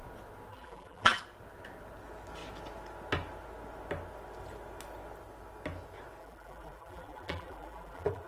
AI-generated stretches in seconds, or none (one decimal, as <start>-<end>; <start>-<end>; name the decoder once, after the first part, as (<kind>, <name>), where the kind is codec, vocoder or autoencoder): 0.5-1.2 (vocoder, BigVGAN v2); 6.2-8.3